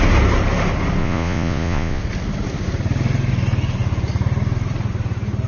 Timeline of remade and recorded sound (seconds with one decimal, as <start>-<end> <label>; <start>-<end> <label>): 0.0-1.0 recorded; 1.0-2.0 remade; 2.0-5.5 recorded